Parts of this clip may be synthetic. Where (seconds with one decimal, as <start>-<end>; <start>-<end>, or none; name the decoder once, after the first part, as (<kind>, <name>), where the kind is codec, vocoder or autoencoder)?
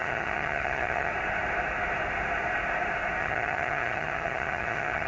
0.0-1.1 (vocoder, HiFi-GAN); 3.2-5.1